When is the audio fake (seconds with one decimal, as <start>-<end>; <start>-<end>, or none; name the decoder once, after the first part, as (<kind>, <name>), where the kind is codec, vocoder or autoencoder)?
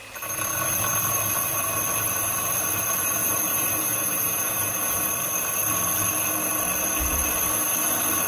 3.2-5.1 (vocoder, Vocos)